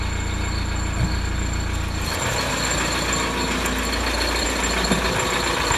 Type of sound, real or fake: real